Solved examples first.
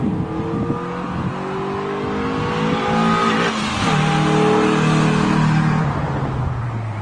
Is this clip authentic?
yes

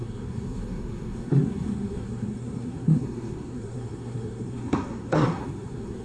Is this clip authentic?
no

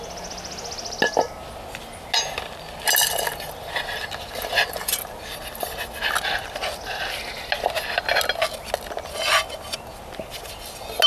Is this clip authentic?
yes